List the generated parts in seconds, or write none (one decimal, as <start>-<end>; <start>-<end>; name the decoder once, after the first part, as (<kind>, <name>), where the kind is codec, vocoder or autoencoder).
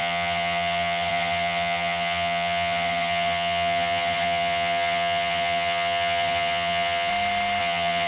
0.0-7.1 (vocoder, HiFi-GAN); 7.6-8.1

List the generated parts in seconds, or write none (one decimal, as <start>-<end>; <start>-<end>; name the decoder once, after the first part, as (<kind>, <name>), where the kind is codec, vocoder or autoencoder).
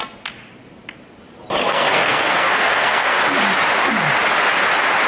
1.6-3.2 (codec, SNAC)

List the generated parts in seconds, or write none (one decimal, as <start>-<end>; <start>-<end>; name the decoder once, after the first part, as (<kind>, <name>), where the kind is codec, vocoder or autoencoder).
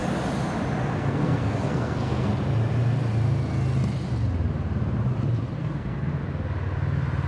0.8-2.3 (codec, SNAC); 5.6-6.1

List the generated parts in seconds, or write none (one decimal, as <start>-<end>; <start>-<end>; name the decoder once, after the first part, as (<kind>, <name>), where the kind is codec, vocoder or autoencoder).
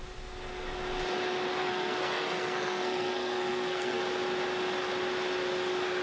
1.6-4.0 (codec, SNAC)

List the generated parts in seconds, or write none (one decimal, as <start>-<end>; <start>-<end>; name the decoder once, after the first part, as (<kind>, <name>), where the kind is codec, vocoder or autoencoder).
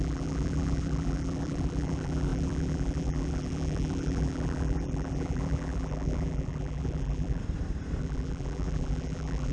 0.0-7.4 (vocoder, BigVGAN v2); 8.0-9.5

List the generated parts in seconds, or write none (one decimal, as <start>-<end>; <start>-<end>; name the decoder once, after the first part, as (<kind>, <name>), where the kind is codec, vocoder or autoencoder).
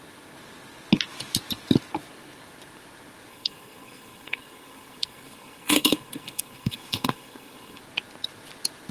3.3-7.8 (codec, SNAC)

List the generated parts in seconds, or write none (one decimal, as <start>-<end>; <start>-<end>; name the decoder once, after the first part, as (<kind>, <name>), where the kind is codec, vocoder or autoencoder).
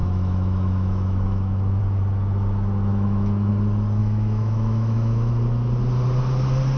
0.0-1.8 (autoencoder, DAC-VAE); 2.9-3.5; 4.0-5.3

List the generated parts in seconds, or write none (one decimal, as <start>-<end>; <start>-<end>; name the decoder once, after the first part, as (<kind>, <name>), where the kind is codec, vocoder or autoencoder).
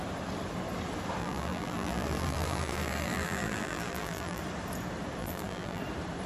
1.2-4.4 (vocoder, BigVGAN v2); 5.2-5.8